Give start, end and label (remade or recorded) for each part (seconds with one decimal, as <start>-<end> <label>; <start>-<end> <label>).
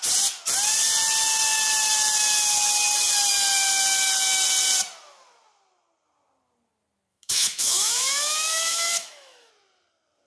0.0-7.1 recorded; 7.1-9.5 remade; 9.5-10.3 recorded